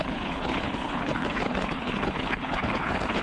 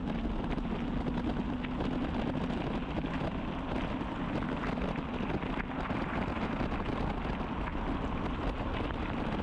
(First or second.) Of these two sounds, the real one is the second